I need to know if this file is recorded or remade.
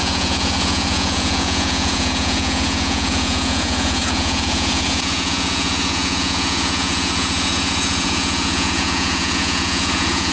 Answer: remade